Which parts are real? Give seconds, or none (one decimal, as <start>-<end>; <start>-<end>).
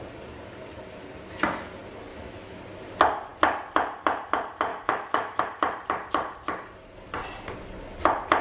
0.0-2.1; 2.6-4.7; 5.4-8.4